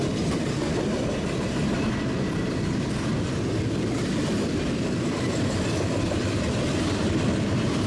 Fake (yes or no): yes